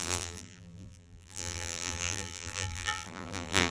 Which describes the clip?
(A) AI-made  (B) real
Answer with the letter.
A